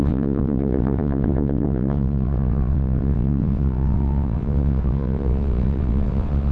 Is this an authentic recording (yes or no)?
no